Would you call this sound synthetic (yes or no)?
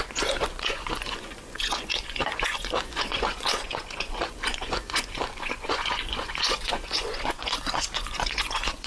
yes